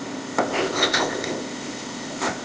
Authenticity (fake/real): fake